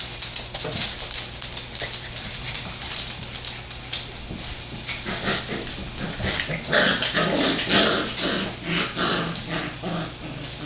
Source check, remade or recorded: recorded